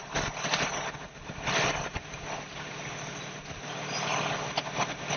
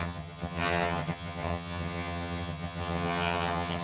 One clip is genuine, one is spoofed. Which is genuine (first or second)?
first